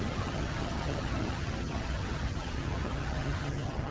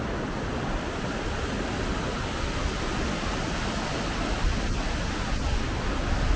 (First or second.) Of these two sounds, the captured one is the second